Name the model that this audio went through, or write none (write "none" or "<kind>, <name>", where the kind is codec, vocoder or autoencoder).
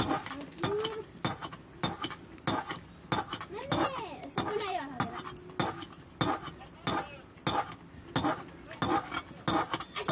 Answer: none